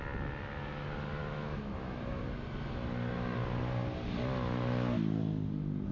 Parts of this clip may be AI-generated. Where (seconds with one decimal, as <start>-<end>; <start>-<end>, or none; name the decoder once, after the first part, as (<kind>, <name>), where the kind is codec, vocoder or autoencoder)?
1.2-2.2 (autoencoder, DAC-VAE)